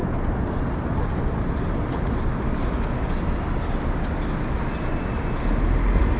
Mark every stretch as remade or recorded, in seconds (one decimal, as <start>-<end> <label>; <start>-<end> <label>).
0.0-2.7 remade; 2.7-6.2 recorded